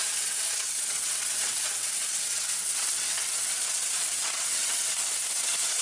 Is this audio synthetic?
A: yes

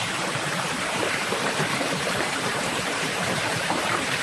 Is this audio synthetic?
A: yes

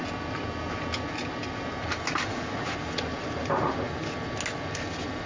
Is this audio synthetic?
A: no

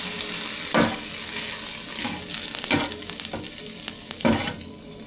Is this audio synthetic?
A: no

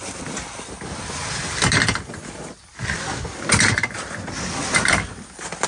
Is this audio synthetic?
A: no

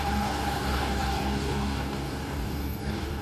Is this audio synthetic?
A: yes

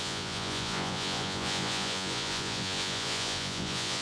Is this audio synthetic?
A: yes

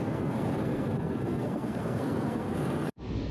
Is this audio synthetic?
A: yes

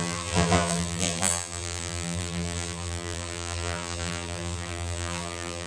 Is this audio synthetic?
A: yes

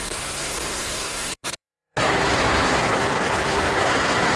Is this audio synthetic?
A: yes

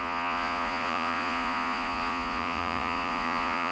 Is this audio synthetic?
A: yes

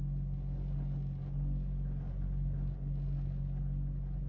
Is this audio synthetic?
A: no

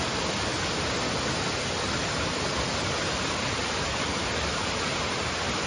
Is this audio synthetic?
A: no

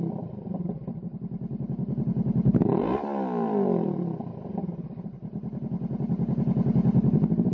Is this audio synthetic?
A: no